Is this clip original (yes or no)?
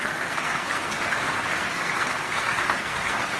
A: no